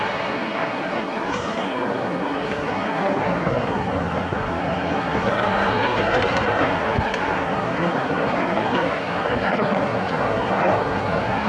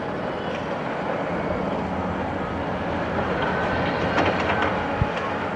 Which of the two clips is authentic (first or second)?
second